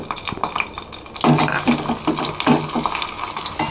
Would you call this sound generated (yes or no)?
no